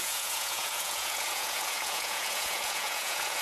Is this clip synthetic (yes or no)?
yes